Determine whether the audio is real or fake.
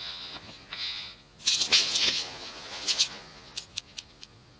fake